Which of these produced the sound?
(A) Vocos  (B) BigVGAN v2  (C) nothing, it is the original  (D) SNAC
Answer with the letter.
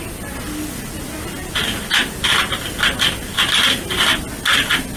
C